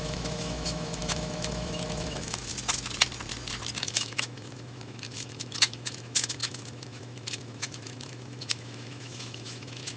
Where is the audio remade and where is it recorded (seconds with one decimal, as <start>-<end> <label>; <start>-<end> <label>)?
0.0-2.5 remade; 2.5-3.8 recorded; 3.8-10.0 remade